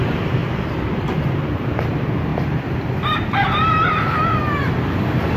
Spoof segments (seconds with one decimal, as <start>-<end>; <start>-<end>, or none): 0.4-1.5; 2.3-4.4